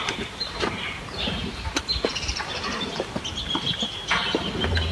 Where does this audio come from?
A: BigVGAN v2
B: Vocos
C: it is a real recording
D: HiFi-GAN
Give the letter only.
A